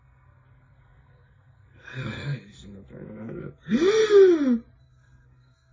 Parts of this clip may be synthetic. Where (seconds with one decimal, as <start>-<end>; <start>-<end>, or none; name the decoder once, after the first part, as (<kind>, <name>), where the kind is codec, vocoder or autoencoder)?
0.0-4.0 (codec, SNAC); 4.8-5.7